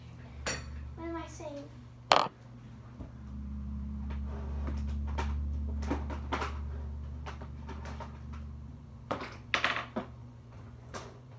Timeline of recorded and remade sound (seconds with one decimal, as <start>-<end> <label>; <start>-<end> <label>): 0.0-8.7 recorded; 8.7-9.5 remade; 9.5-10.2 recorded; 10.2-11.4 remade